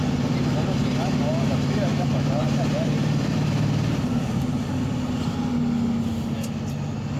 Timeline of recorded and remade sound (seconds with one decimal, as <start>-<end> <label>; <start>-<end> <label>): 0.0-1.9 recorded; 1.9-5.5 remade; 5.5-7.2 recorded